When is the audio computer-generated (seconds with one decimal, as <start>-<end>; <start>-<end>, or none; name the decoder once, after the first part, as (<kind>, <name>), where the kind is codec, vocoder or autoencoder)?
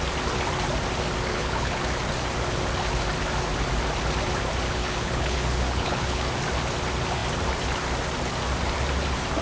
1.3-1.8 (codec, HILCodec); 4.8-6.2